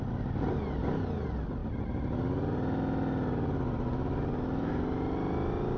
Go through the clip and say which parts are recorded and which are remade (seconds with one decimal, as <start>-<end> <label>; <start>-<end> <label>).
0.0-5.8 recorded